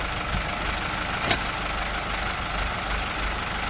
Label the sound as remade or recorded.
recorded